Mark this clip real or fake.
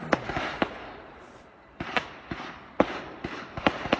fake